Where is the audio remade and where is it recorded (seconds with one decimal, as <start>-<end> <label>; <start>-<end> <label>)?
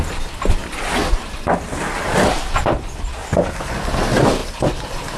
0.0-3.2 recorded; 3.2-3.9 remade; 3.9-5.2 recorded